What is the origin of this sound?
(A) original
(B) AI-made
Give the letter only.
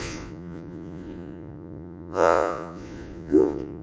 B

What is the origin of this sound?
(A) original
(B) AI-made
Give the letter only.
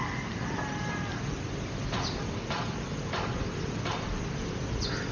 A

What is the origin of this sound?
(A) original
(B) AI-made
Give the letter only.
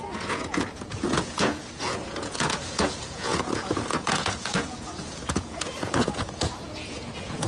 B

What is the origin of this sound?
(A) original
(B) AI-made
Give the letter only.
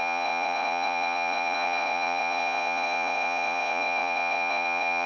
B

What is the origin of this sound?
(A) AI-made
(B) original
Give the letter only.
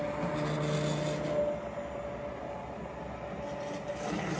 B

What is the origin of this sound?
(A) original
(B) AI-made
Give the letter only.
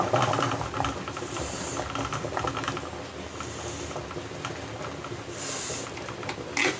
A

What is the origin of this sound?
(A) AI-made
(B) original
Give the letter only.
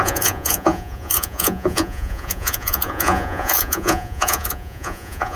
A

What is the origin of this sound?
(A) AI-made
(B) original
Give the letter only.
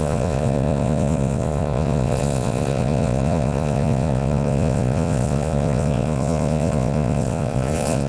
A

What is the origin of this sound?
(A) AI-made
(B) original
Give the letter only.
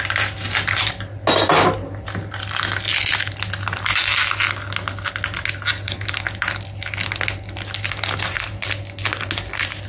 B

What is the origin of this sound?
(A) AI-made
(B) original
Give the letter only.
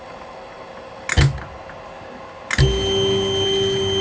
B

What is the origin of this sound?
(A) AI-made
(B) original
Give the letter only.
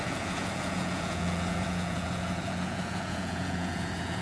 A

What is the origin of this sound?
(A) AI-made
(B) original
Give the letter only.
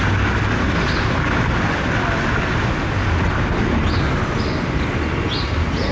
B